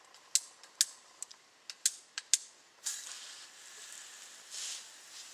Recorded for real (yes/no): yes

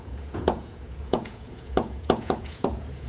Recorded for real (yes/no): no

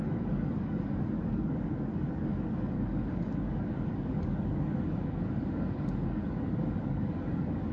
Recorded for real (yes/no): no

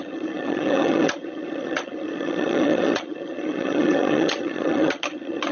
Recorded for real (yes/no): no